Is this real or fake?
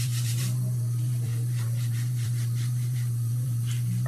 fake